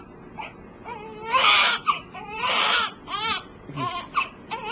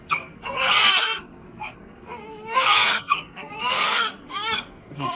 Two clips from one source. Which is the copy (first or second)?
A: second